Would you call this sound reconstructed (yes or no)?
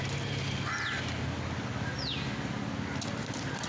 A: no